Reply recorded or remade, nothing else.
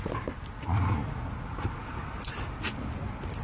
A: recorded